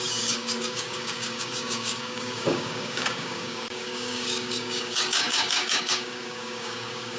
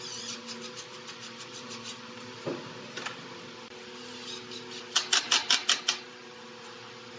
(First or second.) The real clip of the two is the second